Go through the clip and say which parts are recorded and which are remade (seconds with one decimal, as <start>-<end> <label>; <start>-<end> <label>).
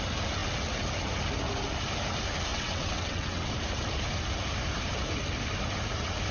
0.0-2.5 recorded; 2.5-3.5 remade; 3.5-6.3 recorded